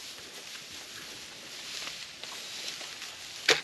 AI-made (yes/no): no